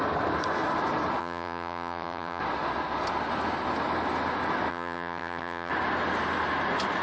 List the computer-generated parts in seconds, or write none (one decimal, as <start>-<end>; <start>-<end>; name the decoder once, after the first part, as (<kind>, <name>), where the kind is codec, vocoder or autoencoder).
1.2-2.4 (vocoder, HiFi-GAN); 4.7-5.7